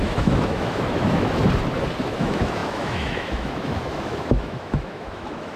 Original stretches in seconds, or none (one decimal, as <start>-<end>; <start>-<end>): 1.4-2.0